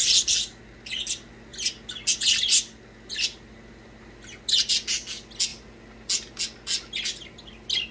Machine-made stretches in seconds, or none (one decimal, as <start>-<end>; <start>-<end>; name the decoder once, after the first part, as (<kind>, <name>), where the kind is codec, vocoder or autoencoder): none